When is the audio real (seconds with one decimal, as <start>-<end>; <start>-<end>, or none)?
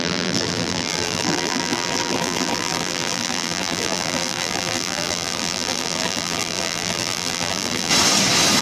7.9-8.6